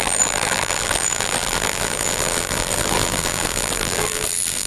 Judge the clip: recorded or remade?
remade